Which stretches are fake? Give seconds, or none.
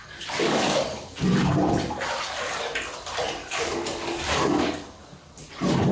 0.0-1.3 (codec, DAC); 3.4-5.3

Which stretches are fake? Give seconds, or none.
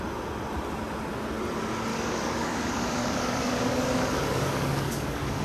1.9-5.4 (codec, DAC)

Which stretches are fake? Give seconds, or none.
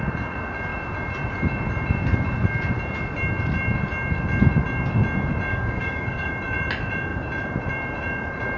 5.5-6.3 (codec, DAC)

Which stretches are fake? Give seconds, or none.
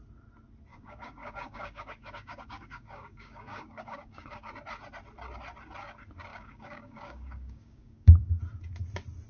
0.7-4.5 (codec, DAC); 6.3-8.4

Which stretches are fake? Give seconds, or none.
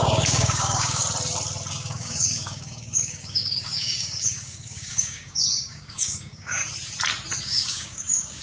0.0-1.0 (codec, DAC); 1.7-6.6; 7.4-8.4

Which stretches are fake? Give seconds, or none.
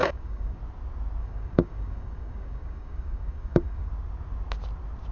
0.0-0.6 (codec, DAC); 1.2-3.9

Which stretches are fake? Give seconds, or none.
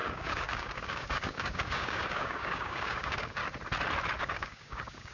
0.0-3.4 (codec, DAC); 4.2-5.1